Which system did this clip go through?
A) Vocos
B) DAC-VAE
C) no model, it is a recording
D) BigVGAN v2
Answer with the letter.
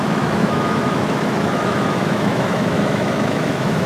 B